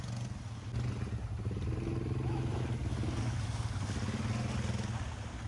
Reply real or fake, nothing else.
real